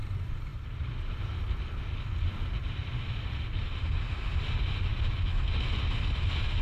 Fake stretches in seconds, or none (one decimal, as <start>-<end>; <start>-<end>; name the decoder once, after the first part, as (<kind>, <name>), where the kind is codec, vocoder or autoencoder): 0.5-1.1 (vocoder, BigVGAN v2)